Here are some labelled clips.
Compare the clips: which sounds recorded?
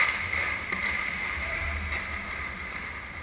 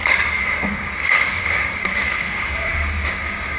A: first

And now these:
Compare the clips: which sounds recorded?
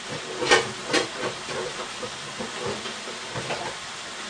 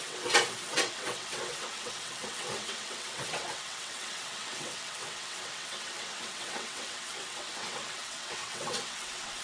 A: first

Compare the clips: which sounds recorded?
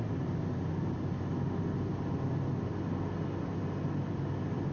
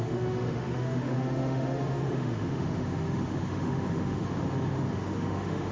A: first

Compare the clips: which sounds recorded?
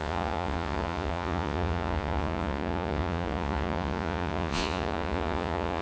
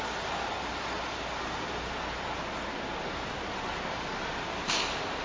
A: second